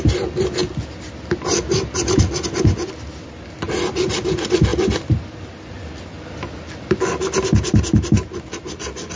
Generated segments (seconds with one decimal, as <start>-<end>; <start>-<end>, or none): none